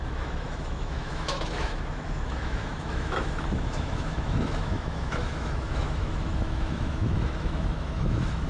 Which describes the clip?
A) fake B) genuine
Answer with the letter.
A